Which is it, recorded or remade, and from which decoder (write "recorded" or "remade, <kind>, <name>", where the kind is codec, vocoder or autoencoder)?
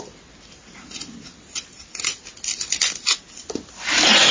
recorded